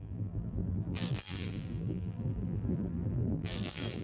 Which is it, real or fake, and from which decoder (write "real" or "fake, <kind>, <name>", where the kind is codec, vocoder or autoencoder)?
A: fake, vocoder, BigVGAN v2